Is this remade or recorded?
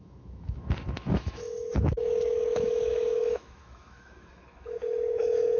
remade